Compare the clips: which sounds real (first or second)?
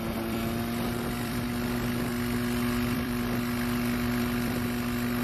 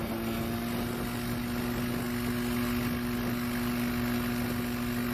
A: second